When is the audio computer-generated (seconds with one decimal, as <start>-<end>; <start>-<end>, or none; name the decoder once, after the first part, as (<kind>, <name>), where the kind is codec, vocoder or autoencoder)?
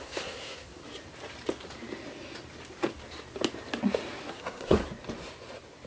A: 0.0-0.8 (codec, SNAC); 4.3-4.8